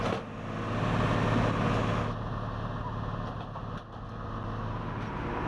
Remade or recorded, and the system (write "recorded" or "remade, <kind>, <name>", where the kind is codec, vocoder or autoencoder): recorded